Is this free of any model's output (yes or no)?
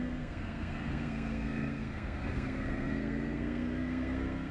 no